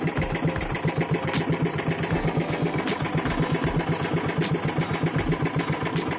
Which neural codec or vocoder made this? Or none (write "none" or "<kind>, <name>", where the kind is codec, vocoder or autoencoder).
none